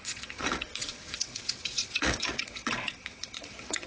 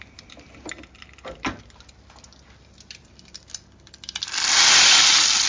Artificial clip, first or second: first